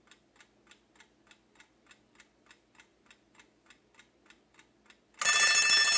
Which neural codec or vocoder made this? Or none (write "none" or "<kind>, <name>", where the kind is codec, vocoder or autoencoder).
none